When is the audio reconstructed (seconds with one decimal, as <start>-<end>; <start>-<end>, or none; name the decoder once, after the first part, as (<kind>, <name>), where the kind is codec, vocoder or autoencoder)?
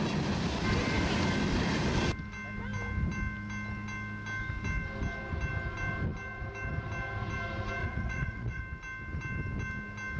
7.8-8.6 (vocoder, Vocos)